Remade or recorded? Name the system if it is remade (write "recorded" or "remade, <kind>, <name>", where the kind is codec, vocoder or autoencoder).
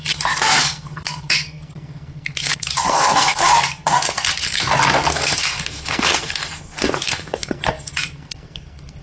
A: remade, codec, SNAC